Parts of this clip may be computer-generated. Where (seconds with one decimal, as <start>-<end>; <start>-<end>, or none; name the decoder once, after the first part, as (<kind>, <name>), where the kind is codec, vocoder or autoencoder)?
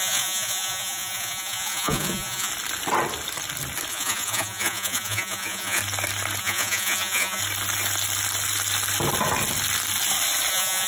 0.0-2.5 (vocoder, Vocos); 3.9-5.8; 6.4-7.4; 10.5-10.9